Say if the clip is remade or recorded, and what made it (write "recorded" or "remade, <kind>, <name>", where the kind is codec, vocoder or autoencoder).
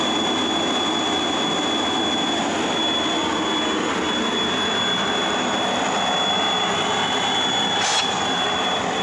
recorded